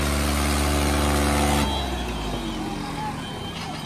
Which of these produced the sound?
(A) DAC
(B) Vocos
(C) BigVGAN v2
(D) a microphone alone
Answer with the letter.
D